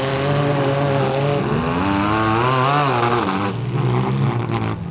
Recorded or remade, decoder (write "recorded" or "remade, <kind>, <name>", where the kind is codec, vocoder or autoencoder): recorded